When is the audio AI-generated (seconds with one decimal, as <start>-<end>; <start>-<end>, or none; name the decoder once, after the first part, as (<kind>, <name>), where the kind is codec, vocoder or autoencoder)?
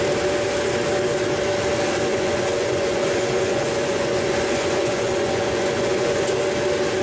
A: 2.1-6.3 (vocoder, Vocos)